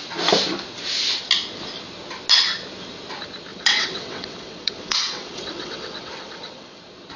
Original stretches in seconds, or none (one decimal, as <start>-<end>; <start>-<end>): 0.0-3.5; 6.8-7.2